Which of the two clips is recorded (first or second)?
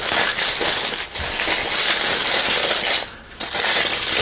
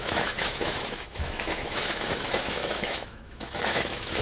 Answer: first